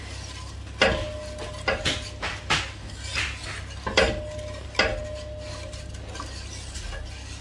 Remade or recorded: recorded